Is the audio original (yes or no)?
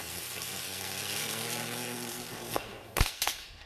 no